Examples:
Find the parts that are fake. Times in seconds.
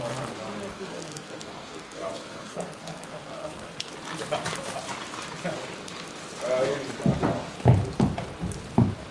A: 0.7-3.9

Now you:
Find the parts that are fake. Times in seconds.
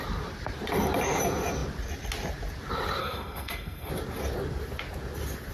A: 3.0-3.9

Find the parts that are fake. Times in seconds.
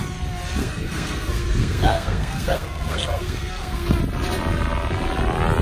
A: 0.6-4.0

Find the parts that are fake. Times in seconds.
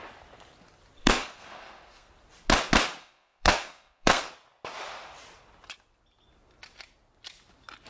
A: 1.0-2.1; 3.0-4.3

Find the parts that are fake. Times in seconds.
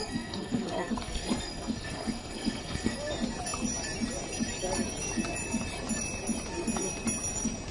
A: 0.0-3.0